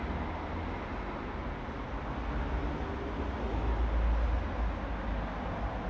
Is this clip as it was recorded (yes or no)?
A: yes